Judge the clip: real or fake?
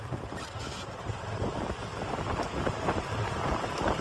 fake